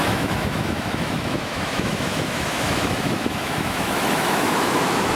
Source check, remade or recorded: remade